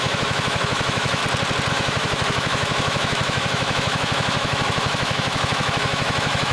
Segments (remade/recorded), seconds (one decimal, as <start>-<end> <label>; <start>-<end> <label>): 0.0-1.2 remade; 1.2-1.7 recorded; 1.7-6.5 remade